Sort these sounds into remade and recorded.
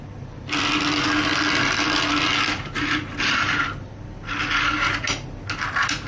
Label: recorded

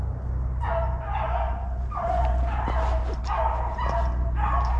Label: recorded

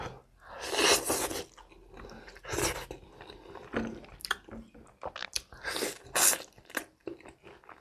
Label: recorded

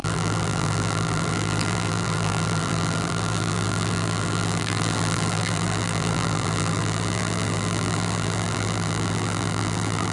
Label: remade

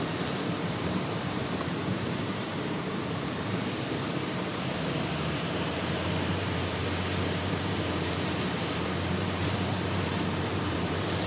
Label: remade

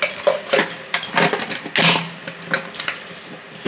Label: recorded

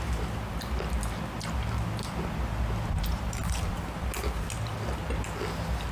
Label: recorded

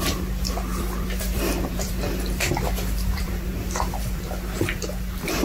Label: remade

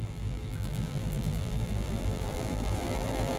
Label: remade